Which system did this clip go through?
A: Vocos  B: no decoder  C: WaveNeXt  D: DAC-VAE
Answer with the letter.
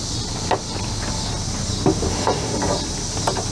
B